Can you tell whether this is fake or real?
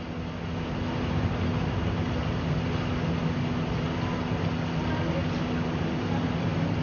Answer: real